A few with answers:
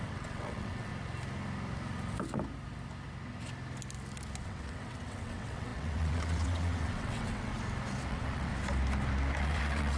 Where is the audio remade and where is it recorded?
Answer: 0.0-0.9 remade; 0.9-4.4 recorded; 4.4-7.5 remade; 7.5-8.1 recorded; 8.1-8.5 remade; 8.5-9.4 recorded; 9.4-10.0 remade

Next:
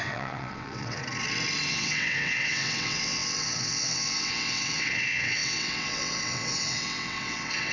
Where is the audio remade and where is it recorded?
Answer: 0.0-1.0 remade; 1.0-1.7 recorded; 1.7-7.7 remade

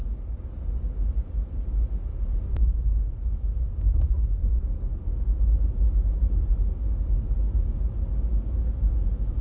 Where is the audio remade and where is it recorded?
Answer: 0.0-9.4 recorded

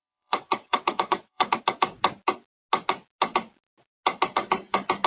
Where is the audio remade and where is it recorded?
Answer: 0.0-1.6 remade; 1.6-5.1 recorded

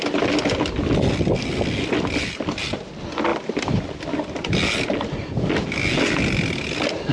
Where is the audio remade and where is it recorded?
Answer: 0.0-7.1 recorded